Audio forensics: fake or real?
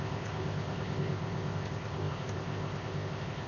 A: fake